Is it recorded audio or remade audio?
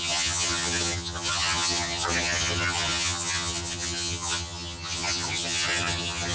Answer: remade